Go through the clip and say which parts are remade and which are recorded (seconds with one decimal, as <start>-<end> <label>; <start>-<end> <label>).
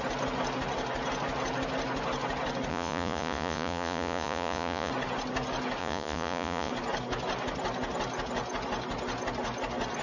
0.0-2.7 recorded; 2.7-4.9 remade; 4.9-5.8 recorded; 5.8-6.7 remade; 6.7-10.0 recorded